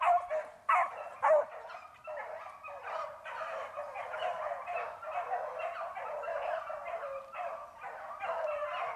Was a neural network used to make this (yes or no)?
no